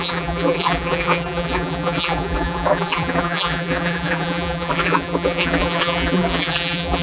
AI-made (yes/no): yes